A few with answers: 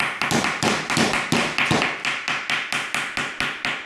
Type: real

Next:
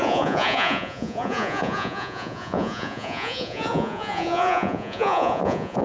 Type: fake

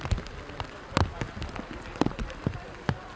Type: real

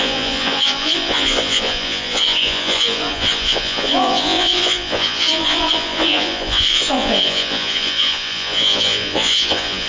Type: fake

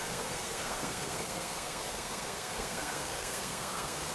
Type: fake